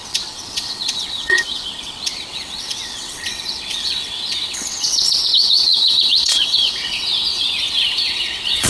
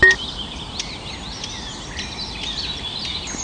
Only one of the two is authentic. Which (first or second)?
second